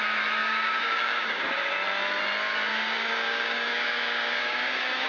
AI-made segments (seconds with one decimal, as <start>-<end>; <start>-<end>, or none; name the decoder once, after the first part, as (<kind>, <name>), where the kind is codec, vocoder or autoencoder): 0.4-1.4 (codec, DAC); 2.7-5.1

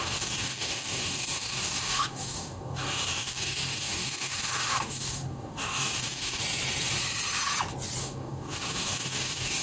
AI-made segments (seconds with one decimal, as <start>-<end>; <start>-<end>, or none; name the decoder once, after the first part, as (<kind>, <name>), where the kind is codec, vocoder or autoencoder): 0.0-6.4 (codec, DAC); 8.0-9.6

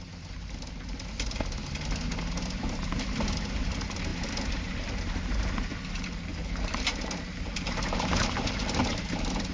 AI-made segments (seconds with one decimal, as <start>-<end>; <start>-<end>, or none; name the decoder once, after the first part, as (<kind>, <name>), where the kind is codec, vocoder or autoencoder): none

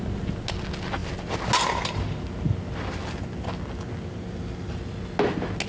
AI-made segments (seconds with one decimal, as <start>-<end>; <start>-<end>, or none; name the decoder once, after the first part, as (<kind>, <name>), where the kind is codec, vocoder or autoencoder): none